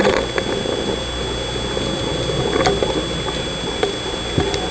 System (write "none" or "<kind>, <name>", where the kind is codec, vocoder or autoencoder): none